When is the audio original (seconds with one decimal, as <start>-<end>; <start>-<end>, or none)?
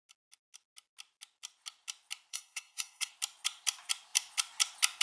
0.0-2.3; 3.1-5.0